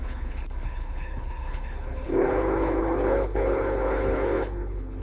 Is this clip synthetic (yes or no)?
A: yes